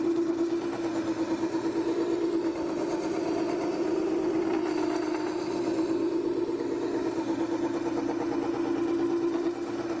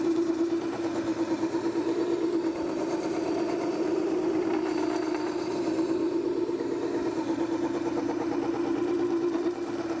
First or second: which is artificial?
second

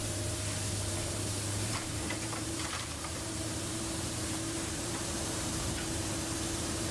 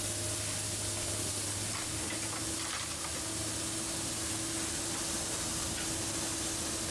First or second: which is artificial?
first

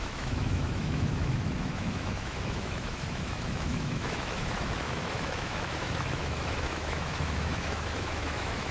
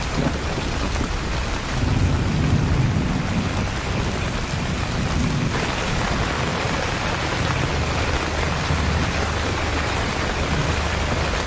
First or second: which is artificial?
first